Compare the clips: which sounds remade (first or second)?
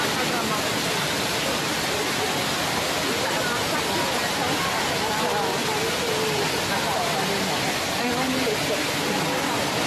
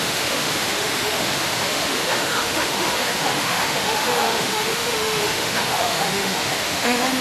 second